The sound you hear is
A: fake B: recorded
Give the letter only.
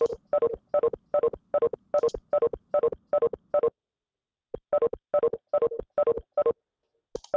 B